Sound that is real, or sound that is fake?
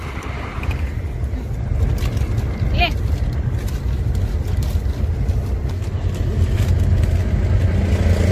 real